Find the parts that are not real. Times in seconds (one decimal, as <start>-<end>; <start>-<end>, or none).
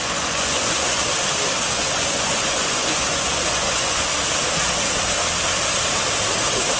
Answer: 0.0-1.0; 1.7-4.1